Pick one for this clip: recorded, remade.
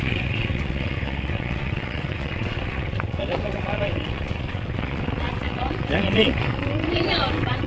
remade